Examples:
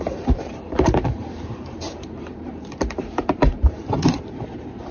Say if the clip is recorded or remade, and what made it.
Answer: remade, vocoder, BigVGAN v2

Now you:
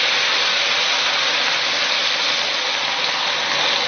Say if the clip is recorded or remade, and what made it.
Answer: recorded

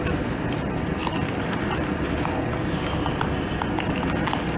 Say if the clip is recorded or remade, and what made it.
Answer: recorded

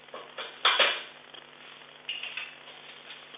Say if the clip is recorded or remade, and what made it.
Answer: recorded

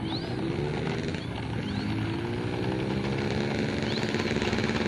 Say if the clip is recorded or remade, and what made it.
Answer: recorded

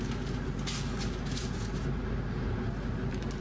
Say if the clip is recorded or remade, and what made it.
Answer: recorded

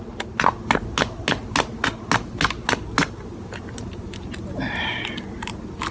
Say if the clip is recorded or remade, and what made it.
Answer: recorded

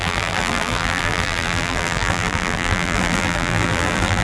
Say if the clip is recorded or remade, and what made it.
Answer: remade, vocoder, BigVGAN v2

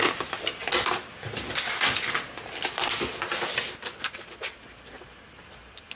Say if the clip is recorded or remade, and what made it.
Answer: recorded